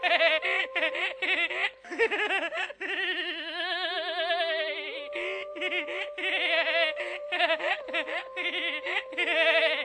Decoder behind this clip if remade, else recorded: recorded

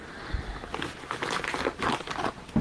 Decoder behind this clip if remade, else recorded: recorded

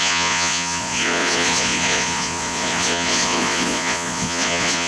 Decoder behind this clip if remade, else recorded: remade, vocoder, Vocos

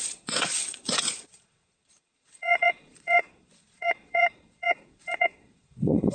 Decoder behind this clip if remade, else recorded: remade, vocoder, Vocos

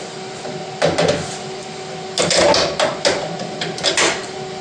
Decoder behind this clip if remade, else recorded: recorded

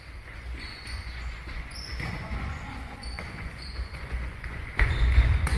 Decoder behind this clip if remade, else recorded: remade, vocoder, Vocos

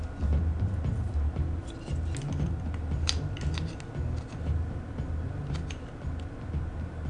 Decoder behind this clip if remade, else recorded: recorded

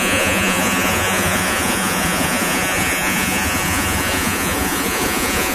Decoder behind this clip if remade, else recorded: remade, vocoder, Vocos